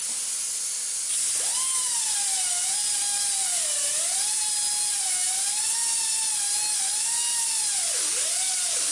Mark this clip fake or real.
real